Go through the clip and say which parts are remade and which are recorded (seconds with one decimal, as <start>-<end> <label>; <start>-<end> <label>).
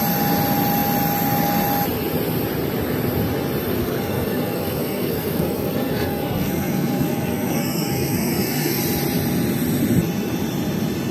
0.0-3.8 recorded; 3.8-8.8 remade; 8.8-11.1 recorded